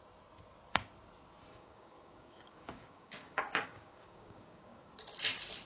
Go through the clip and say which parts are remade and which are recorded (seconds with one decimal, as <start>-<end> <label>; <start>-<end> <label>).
0.0-1.5 recorded; 1.5-4.9 remade; 4.9-5.7 recorded